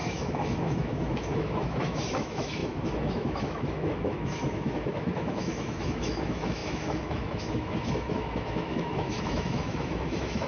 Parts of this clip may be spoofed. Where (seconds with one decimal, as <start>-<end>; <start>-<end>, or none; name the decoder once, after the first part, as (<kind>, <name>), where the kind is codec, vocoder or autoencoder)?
0.0-10.5 (autoencoder, DAC-VAE)